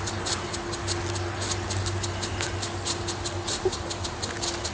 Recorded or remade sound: recorded